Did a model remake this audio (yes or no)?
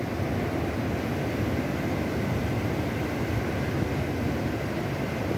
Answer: no